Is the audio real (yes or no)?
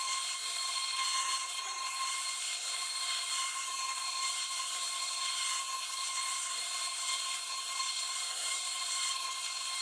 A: no